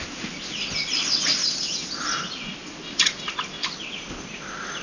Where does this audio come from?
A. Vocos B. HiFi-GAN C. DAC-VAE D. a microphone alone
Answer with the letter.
D